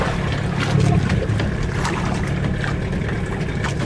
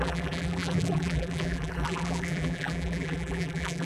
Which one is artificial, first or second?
second